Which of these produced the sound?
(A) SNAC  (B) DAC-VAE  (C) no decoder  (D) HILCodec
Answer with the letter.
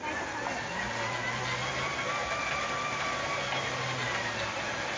C